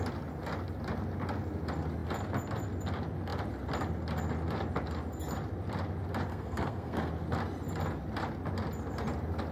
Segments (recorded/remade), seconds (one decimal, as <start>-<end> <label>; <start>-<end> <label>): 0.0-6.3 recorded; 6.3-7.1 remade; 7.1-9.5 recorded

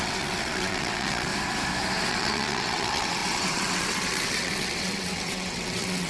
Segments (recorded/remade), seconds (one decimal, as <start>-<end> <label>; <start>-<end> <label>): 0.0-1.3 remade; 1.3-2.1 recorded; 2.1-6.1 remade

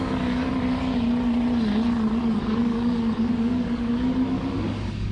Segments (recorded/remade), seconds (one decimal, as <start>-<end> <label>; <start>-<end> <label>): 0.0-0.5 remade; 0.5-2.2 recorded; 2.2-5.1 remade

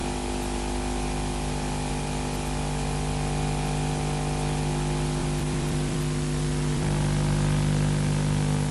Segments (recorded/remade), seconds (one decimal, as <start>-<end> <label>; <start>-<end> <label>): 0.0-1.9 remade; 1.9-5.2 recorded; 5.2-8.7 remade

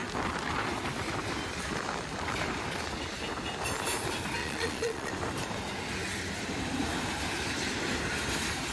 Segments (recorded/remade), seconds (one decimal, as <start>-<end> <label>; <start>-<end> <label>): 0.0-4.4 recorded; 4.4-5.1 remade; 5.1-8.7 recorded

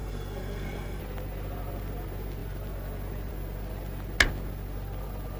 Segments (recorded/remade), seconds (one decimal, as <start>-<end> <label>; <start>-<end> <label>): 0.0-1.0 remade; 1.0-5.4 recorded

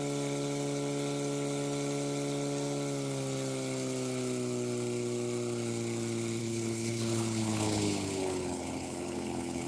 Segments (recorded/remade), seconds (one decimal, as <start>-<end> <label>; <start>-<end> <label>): 0.0-6.4 recorded; 6.4-9.7 remade